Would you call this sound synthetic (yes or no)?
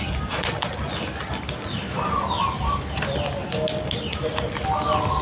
no